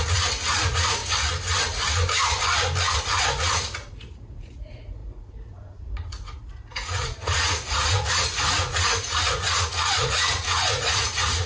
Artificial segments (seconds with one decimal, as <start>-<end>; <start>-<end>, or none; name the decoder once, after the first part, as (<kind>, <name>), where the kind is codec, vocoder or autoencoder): 0.0-1.0 (vocoder, Vocos); 3.2-11.5